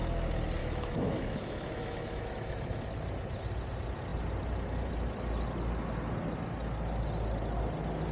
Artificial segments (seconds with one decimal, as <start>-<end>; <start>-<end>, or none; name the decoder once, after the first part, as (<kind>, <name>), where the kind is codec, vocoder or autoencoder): 0.6-2.8 (autoencoder, DAC-VAE)